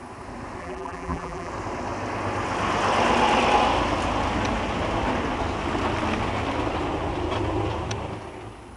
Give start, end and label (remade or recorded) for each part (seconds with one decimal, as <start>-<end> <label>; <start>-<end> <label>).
0.0-0.6 recorded; 0.6-1.5 remade; 1.5-8.8 recorded